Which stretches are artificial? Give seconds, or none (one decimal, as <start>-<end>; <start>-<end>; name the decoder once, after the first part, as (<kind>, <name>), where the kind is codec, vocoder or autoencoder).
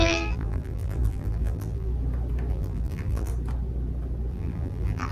0.0-1.9 (vocoder, BigVGAN v2); 2.5-3.3; 4.3-5.1